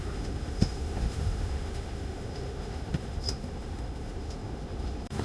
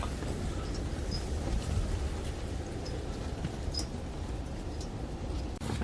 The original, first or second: second